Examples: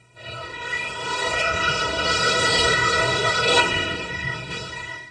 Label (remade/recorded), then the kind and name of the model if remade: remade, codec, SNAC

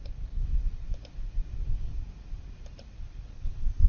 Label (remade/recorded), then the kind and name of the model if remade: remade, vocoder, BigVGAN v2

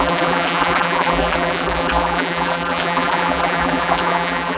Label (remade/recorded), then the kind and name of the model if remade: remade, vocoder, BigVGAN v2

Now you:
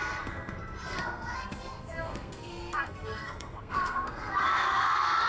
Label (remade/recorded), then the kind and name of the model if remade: remade, codec, SNAC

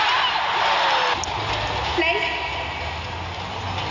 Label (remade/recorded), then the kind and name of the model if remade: recorded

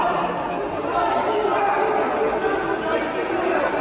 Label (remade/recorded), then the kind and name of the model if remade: recorded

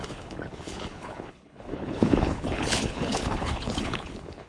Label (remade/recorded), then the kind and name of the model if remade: remade, codec, HILCodec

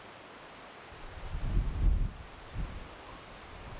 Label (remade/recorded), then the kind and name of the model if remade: recorded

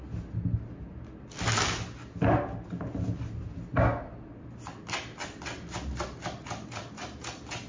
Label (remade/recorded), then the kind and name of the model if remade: recorded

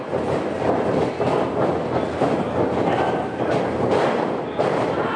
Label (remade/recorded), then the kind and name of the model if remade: recorded